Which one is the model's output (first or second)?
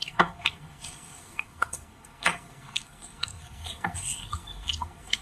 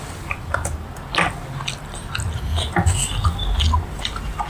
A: first